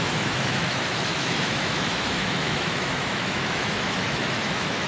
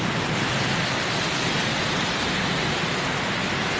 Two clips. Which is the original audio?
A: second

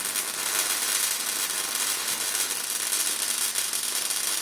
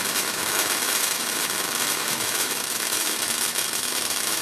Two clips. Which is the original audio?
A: first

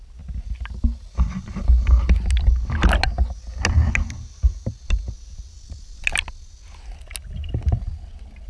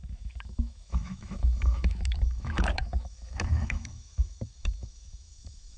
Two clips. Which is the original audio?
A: first